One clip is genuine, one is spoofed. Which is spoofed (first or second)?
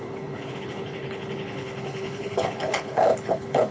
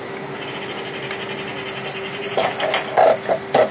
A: first